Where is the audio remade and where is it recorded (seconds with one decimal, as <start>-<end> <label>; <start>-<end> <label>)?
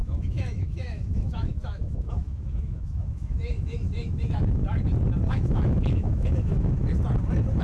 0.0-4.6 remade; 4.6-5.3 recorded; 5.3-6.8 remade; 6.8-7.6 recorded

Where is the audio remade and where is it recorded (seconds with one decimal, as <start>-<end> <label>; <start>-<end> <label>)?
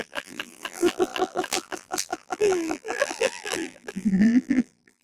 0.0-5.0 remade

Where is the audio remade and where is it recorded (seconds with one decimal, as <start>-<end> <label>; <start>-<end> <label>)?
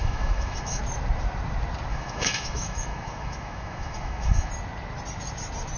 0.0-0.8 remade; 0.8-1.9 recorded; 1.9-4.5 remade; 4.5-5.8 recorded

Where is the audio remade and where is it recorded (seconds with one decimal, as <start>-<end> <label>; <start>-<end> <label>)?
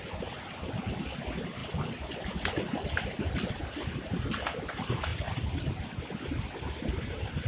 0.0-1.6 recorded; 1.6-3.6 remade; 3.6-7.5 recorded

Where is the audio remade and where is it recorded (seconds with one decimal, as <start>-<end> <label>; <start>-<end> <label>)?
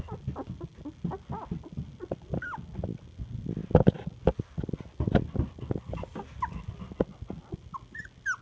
0.0-8.4 recorded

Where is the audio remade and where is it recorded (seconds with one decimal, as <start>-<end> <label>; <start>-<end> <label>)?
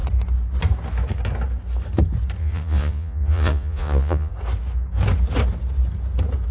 0.0-2.4 recorded; 2.4-4.3 remade; 4.3-6.5 recorded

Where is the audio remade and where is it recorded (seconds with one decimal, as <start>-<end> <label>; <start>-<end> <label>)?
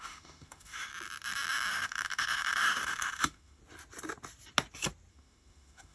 0.0-0.9 remade; 0.9-1.7 recorded; 1.7-3.6 remade; 3.6-5.1 recorded; 5.1-5.9 remade